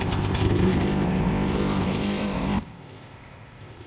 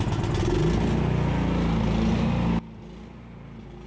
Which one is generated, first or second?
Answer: first